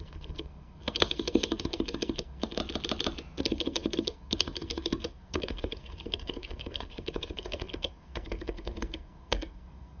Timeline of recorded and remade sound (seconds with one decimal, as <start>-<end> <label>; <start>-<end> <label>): 0.0-2.6 remade; 2.6-3.4 recorded; 3.4-10.0 remade